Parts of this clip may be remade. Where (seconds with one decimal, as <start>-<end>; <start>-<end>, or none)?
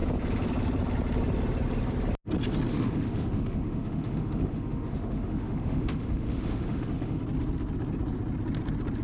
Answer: 2.7-7.2